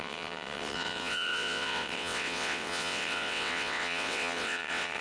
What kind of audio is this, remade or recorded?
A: remade